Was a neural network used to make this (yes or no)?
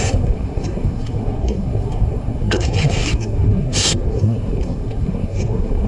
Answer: yes